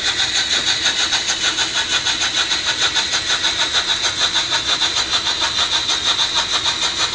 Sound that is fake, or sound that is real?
real